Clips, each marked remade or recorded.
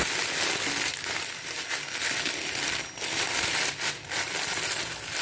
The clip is recorded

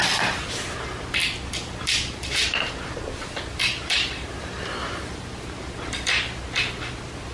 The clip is recorded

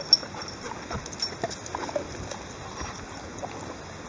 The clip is recorded